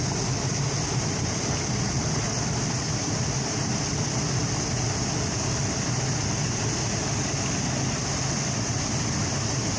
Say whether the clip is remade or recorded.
recorded